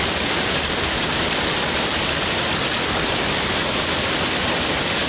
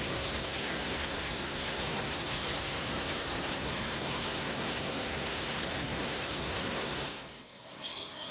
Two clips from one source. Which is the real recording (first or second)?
first